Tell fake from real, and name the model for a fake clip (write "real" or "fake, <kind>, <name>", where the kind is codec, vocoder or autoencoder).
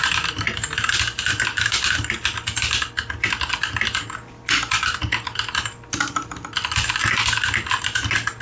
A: real